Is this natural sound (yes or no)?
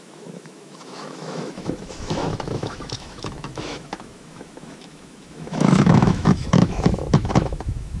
no